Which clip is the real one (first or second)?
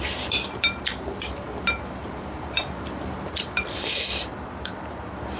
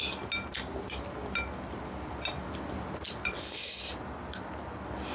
second